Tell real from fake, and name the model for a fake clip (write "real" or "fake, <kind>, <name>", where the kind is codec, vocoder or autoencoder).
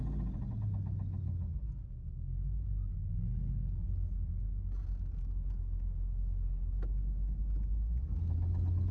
real